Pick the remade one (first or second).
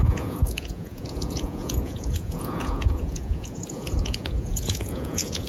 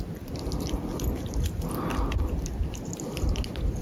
first